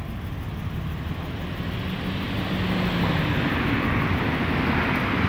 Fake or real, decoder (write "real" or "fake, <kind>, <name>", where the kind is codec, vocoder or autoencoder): real